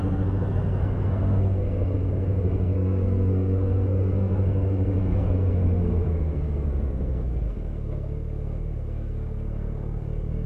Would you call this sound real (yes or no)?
no